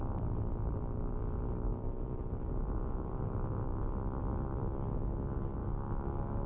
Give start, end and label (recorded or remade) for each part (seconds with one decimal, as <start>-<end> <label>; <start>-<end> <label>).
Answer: 0.0-5.6 recorded; 5.6-6.5 remade